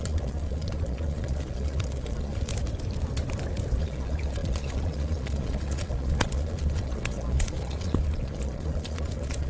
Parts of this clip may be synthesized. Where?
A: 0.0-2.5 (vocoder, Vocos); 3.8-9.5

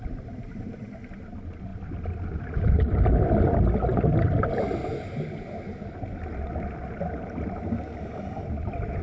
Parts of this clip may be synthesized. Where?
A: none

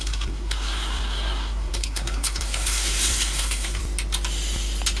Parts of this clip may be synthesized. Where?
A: 0.0-3.8 (codec, SNAC)

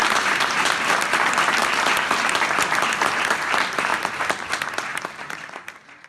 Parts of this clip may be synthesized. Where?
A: 0.0-0.9 (vocoder, BigVGAN v2); 4.9-6.1

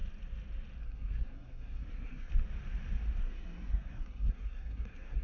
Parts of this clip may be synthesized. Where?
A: 0.8-2.3 (codec, SNAC); 3.2-5.2

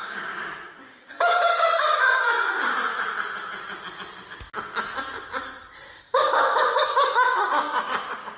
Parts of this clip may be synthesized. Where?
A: 0.0-2.9 (codec, DAC); 6.0-8.4

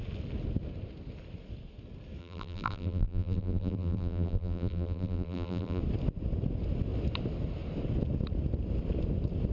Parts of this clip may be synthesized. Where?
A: 2.2-5.8 (vocoder, BigVGAN v2)